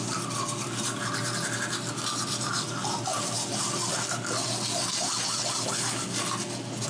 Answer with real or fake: real